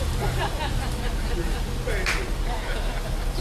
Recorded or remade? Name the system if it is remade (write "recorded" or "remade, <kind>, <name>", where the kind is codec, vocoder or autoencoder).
recorded